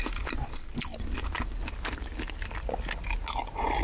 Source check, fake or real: real